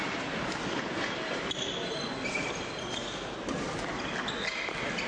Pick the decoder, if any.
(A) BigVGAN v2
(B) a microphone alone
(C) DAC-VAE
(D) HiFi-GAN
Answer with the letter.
B